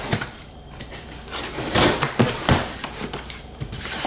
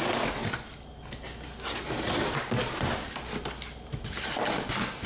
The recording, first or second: second